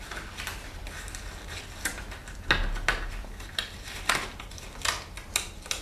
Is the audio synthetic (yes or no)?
no